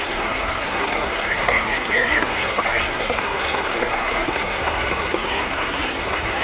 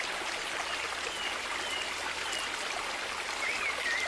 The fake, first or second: first